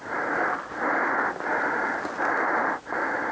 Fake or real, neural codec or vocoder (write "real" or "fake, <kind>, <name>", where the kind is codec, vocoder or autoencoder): real